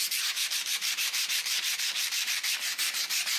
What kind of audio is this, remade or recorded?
remade